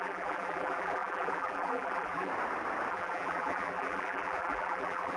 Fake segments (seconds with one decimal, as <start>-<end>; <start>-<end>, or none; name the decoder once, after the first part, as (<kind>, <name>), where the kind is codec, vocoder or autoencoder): 0.0-2.3 (vocoder, BigVGAN v2); 2.9-5.2